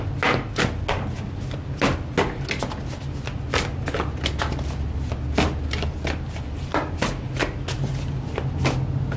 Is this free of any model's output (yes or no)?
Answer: yes